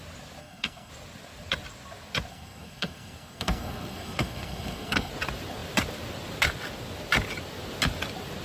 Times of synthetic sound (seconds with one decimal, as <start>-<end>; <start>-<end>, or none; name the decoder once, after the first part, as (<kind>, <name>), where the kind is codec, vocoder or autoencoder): 0.4-0.9 (codec, SNAC); 2.3-5.1